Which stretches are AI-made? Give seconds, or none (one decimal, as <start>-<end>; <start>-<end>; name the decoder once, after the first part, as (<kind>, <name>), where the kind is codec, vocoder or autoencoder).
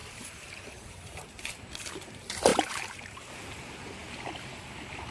0.0-1.4 (vocoder, BigVGAN v2); 2.5-3.3